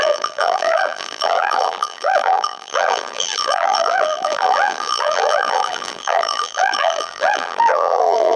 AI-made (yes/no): yes